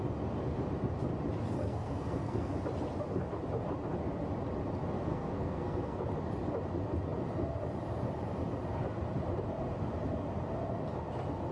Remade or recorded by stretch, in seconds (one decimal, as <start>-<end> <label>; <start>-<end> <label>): 0.0-1.6 recorded; 1.6-2.5 remade; 2.5-5.1 recorded; 5.1-6.0 remade; 6.0-11.5 recorded